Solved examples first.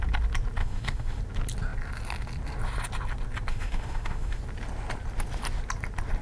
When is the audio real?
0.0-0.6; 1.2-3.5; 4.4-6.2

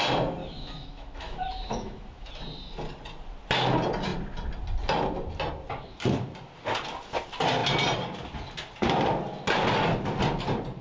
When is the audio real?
0.0-0.4; 2.3-10.8

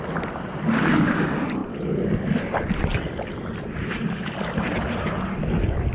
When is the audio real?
0.0-5.9

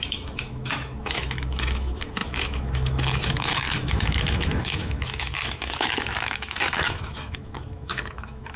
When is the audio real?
none